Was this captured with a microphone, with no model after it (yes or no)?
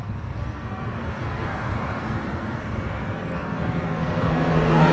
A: no